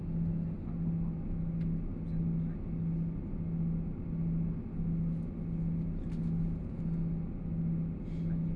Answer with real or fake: real